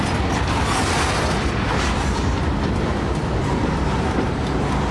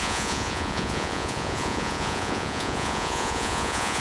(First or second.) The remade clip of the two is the second